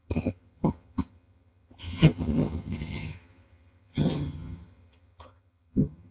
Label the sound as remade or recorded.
remade